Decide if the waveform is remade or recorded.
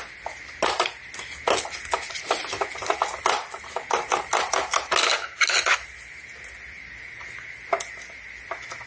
recorded